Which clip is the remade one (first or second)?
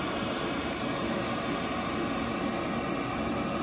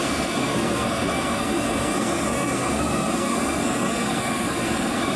second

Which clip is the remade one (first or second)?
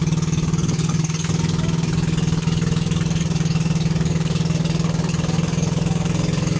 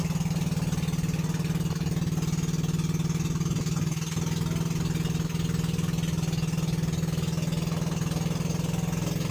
first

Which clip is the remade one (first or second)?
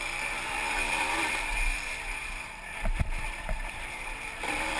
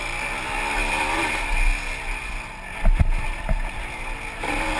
first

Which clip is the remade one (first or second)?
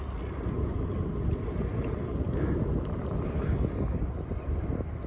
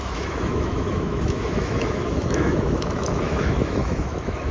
second